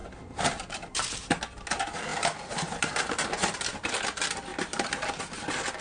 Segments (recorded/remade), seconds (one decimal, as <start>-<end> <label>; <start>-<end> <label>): 0.0-1.4 remade; 1.4-2.1 recorded; 2.1-4.0 remade; 4.0-4.5 recorded; 4.5-5.2 remade; 5.2-5.8 recorded